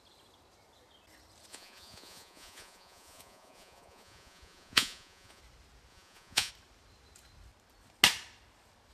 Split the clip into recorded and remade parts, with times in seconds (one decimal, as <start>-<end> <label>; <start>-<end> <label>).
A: 0.0-1.5 recorded; 1.5-5.4 remade; 5.4-5.9 recorded; 5.9-6.5 remade; 6.5-8.9 recorded